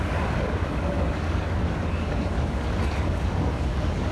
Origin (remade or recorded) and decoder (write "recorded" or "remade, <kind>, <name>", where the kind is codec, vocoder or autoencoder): remade, codec, DAC